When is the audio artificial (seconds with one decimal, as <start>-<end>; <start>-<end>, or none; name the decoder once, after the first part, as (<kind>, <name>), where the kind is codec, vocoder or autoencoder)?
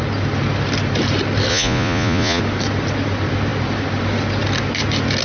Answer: 1.5-2.4 (vocoder, Vocos)